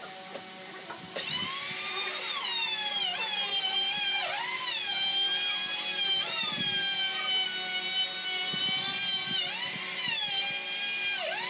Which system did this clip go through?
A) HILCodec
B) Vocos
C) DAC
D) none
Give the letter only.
D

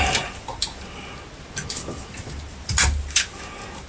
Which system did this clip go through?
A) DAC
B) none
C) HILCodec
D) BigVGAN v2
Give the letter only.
B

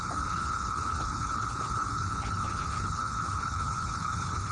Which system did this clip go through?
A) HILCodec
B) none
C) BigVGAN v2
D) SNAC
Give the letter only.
A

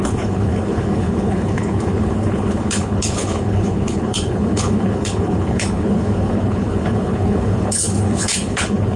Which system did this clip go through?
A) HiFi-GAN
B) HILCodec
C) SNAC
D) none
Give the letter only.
B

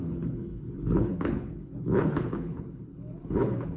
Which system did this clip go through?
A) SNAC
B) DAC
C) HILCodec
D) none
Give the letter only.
C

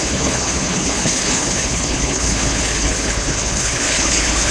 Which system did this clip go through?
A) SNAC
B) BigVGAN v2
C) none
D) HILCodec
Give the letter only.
D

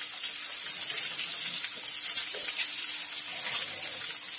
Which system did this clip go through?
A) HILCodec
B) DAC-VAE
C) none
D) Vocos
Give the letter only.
C